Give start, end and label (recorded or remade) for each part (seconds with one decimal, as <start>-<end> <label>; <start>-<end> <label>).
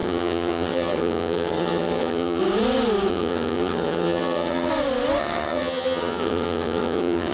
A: 0.0-2.4 remade; 2.4-3.1 recorded; 3.1-4.7 remade; 4.7-5.2 recorded; 5.2-7.3 remade